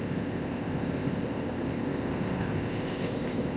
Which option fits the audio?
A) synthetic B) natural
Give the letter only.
A